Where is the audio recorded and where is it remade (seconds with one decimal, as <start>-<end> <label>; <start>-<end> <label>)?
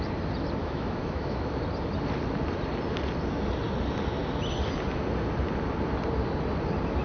0.0-0.6 recorded; 0.6-1.6 remade; 1.6-7.0 recorded